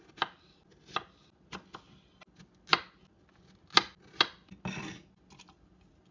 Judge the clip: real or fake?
real